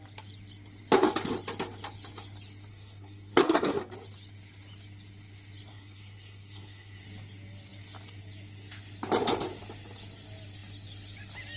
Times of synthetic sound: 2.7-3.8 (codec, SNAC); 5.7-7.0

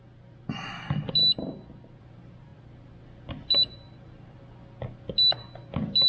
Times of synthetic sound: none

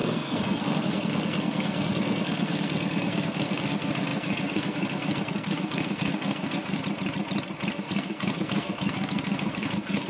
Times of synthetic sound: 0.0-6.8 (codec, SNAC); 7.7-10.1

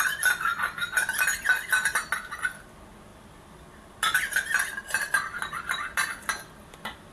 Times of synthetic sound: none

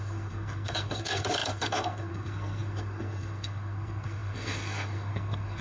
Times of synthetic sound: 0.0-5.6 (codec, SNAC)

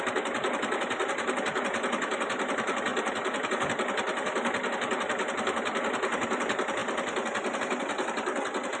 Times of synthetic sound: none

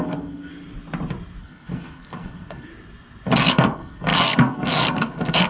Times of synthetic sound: 0.0-0.5 (codec, SNAC); 1.4-2.7; 3.5-5.5

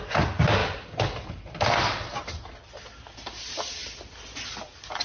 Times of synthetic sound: none